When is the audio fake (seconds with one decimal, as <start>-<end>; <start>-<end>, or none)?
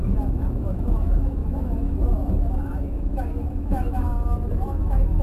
0.0-5.2